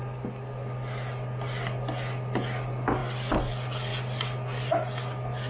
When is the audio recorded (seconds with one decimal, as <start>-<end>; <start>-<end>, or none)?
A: 0.0-5.5